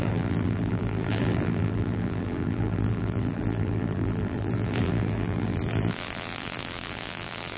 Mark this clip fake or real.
fake